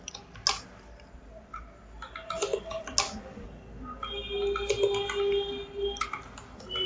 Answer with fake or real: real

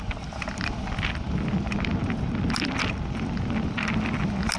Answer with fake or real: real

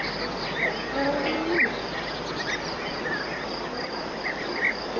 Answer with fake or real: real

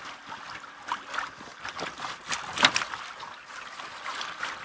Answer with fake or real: real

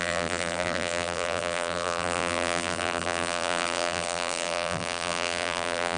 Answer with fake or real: fake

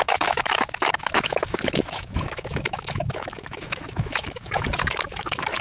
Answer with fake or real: fake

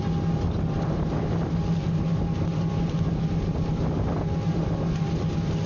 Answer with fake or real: real